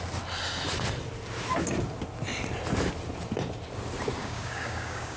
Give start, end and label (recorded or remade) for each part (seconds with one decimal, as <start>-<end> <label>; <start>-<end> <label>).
0.0-4.2 recorded; 4.2-5.2 remade